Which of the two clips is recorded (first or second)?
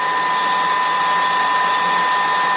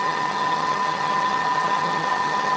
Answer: first